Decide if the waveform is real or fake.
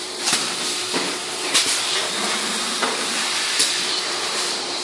fake